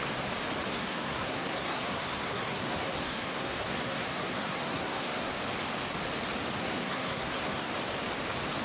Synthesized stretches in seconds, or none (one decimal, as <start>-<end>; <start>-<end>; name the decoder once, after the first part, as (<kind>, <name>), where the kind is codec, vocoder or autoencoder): 0.7-5.3 (codec, SNAC); 6.6-7.7